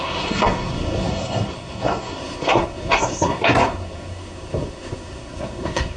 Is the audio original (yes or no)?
no